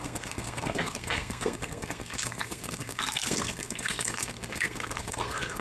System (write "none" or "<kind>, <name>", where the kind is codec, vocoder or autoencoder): codec, SNAC